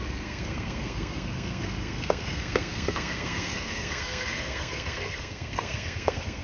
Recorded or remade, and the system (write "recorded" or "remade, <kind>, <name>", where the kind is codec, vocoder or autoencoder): remade, codec, SNAC